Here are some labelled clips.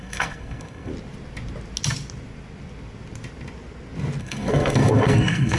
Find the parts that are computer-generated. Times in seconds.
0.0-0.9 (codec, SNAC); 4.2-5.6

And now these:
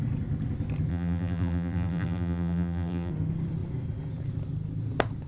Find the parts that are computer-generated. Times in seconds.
0.9-3.1 (vocoder, BigVGAN v2)

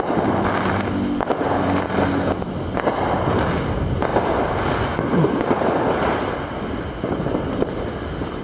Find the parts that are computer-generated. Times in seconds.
none

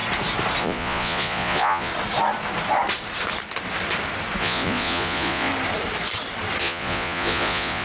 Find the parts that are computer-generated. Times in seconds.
0.6-1.9 (vocoder, Vocos); 4.4-5.5; 6.6-7.8

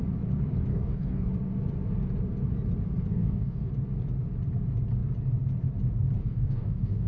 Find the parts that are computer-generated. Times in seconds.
0.7-1.3 (codec, DAC); 3.1-3.7; 6.2-7.1

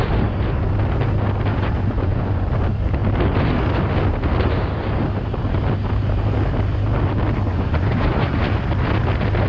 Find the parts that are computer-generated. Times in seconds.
1.5-2.5 (vocoder, Vocos); 7.5-8.7

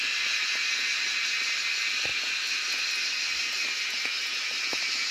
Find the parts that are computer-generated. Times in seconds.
none